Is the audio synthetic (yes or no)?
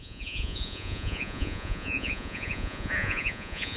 yes